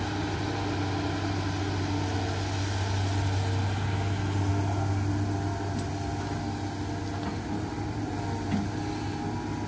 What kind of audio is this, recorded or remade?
recorded